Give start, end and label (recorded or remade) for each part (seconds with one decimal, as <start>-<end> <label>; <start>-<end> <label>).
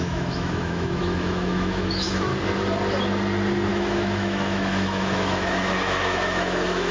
0.0-2.3 remade; 2.3-3.7 recorded; 3.7-6.9 remade